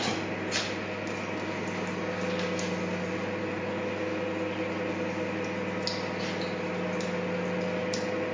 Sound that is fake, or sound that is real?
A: real